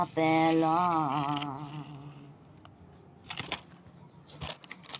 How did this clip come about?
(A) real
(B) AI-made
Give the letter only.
A